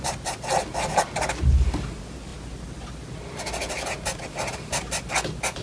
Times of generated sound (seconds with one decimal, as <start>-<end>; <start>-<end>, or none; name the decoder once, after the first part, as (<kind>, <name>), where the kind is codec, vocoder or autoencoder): none